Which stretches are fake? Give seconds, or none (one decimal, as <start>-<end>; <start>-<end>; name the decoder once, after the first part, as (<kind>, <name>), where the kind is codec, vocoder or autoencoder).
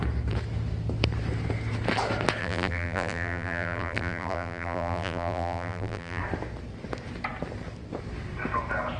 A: 2.4-6.2 (vocoder, BigVGAN v2)